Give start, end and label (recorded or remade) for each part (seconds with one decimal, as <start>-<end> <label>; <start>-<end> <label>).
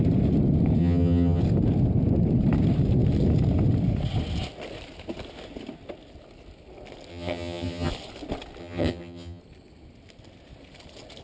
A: 0.0-0.8 recorded; 0.8-1.4 remade; 1.4-7.1 recorded; 7.1-7.9 remade; 7.9-8.6 recorded; 8.6-9.4 remade; 9.4-11.2 recorded